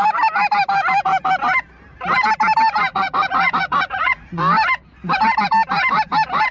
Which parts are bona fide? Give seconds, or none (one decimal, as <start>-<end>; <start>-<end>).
0.0-2.9; 4.4-6.5